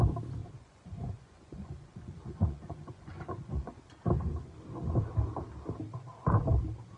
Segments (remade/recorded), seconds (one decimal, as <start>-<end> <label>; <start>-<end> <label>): 0.0-0.4 recorded; 0.4-3.8 remade; 3.8-7.0 recorded